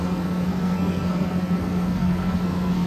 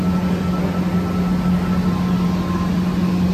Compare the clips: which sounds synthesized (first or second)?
first